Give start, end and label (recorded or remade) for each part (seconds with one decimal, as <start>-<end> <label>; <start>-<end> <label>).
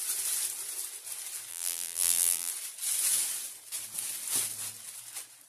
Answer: 0.0-1.5 recorded; 1.5-2.5 remade; 2.5-5.5 recorded